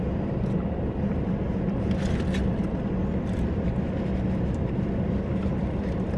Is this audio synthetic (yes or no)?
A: yes